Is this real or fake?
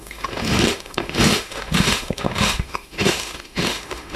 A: fake